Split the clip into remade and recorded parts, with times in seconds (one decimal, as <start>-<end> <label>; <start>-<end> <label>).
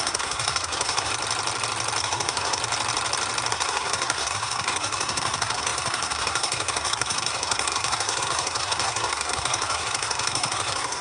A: 0.0-1.1 remade; 1.1-2.0 recorded; 2.0-2.6 remade; 2.6-3.5 recorded; 3.5-11.0 remade